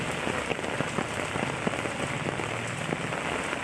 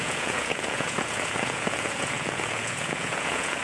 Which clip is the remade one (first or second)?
second